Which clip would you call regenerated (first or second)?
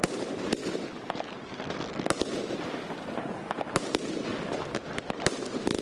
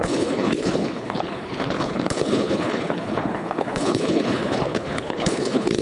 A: second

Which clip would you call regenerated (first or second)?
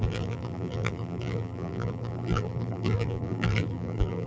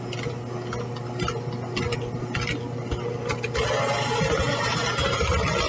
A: first